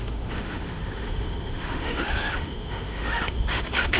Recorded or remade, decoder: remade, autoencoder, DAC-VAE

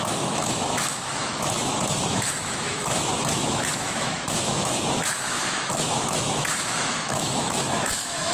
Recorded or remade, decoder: remade, autoencoder, DAC-VAE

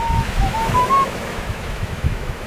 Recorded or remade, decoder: remade, autoencoder, DAC-VAE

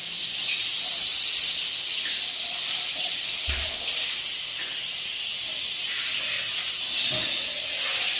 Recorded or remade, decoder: recorded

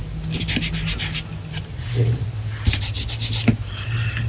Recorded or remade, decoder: recorded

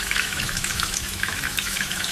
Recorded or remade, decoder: remade, autoencoder, DAC-VAE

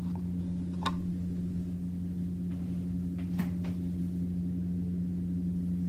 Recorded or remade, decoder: recorded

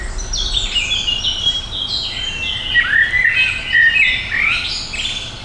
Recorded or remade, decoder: recorded